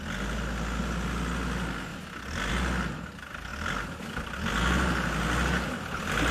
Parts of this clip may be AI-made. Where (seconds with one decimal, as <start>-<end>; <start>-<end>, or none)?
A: none